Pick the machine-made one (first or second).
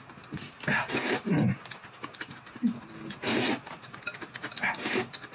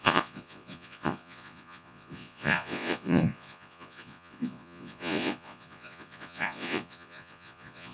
second